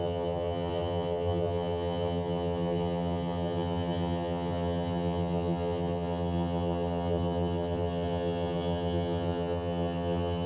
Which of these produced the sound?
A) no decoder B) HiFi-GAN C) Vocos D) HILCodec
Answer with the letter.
B